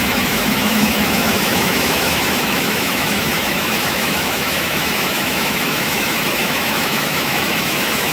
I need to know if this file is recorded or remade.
remade